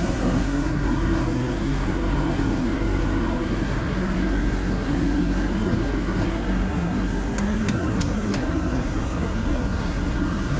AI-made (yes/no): yes